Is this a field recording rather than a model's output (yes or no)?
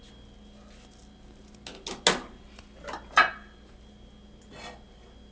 yes